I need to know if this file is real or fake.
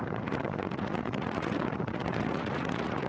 fake